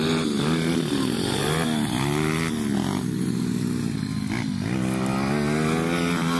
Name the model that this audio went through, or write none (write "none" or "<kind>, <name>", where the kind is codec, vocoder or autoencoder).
none